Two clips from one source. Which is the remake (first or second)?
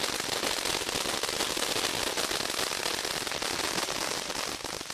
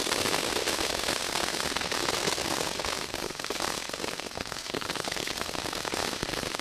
second